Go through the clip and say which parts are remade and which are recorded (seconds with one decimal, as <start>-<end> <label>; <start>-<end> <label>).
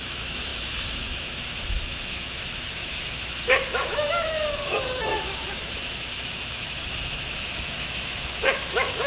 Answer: 0.0-9.1 remade